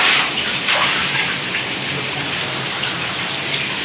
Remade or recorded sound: remade